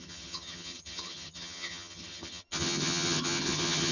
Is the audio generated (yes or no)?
yes